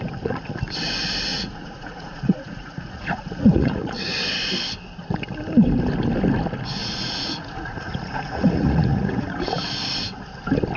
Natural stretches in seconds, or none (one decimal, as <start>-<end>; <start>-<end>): 0.0-1.3; 4.0-6.8; 9.5-10.8